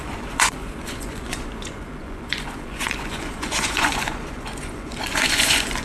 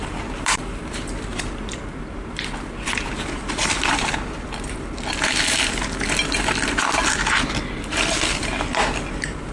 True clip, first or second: second